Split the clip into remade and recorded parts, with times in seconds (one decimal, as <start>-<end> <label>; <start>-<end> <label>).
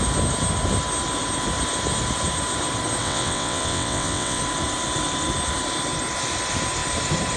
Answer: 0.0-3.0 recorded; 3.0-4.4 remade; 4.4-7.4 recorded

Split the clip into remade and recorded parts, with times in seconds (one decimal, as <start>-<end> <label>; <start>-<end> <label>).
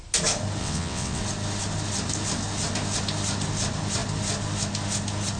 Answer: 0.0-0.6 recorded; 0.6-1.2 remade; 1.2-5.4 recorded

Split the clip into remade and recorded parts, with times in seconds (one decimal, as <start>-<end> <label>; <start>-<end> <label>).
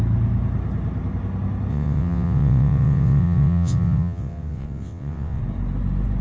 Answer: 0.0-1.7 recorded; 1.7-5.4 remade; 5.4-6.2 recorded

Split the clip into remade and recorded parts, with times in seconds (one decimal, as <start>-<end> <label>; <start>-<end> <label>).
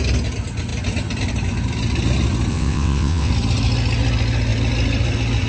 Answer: 0.0-2.5 recorded; 2.5-3.3 remade; 3.3-5.5 recorded